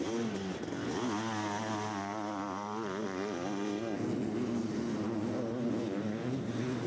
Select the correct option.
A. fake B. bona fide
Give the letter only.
B